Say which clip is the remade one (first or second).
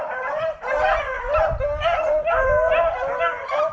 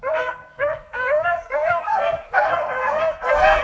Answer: second